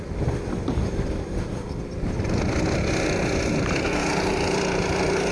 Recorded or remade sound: recorded